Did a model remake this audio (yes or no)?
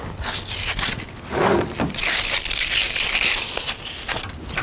no